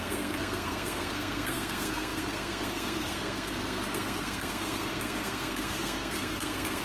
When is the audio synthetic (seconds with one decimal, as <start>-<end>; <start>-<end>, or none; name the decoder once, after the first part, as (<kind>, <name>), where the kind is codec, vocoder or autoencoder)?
0.0-6.8 (codec, SNAC)

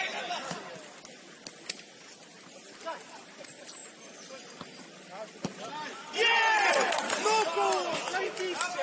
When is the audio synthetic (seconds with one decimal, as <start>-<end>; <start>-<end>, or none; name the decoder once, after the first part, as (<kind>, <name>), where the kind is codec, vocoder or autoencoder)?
none

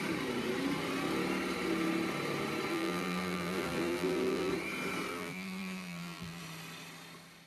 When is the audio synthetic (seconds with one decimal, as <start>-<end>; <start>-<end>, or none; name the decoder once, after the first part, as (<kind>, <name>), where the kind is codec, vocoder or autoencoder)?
2.7-4.5 (vocoder, BigVGAN v2); 5.1-6.4

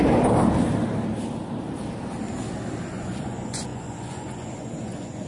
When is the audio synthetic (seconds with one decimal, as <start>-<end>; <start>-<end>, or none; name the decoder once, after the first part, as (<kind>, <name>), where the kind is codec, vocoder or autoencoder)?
2.9-5.3 (vocoder, Vocos)

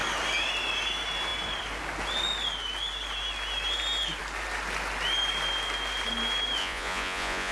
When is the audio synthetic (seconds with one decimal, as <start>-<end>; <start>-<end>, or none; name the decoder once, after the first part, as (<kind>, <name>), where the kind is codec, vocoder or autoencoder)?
6.6-7.5 (vocoder, Vocos)